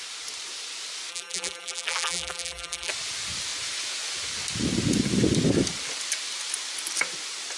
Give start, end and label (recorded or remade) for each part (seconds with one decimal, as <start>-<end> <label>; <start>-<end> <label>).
0.0-1.1 recorded; 1.1-2.9 remade; 2.9-7.6 recorded